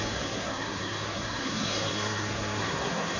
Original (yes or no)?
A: no